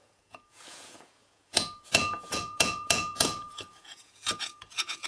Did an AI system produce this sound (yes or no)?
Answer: yes